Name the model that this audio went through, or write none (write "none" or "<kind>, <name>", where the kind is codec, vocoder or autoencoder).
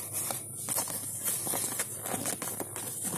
none